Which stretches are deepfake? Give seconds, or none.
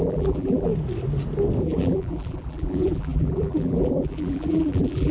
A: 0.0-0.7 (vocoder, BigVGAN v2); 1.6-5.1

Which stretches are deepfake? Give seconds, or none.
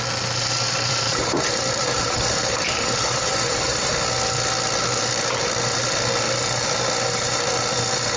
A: 0.4-3.9 (vocoder, BigVGAN v2)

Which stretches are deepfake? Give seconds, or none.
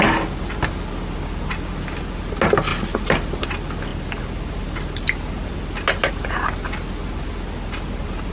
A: none